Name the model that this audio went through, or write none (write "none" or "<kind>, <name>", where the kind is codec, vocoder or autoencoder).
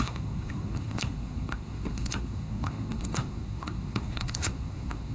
codec, SNAC